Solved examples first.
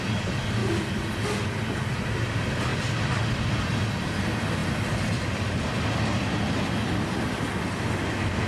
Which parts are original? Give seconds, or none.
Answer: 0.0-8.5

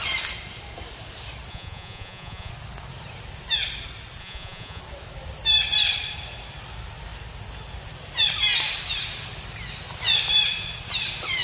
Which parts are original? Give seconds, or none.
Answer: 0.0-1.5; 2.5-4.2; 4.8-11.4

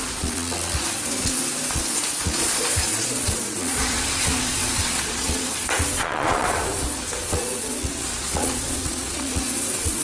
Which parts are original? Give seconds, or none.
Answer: none